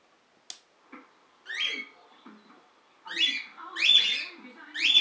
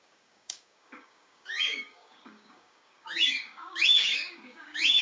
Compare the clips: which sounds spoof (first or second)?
second